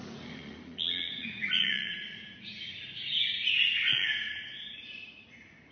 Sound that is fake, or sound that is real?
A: fake